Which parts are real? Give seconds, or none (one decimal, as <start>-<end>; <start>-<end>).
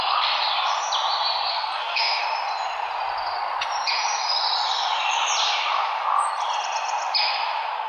0.0-1.5; 2.2-7.9